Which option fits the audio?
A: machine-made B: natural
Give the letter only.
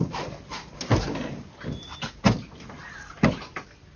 B